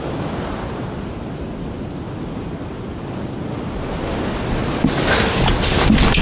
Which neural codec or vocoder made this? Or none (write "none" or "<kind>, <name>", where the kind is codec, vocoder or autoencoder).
none